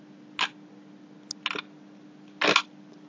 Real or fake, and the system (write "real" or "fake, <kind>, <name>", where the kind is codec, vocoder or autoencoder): real